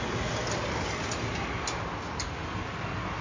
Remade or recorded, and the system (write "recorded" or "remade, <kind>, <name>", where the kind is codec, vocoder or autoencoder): recorded